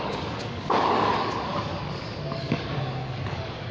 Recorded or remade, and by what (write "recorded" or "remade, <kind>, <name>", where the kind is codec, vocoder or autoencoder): remade, codec, DAC